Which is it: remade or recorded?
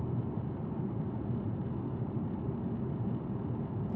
recorded